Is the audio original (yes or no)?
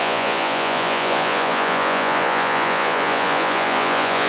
no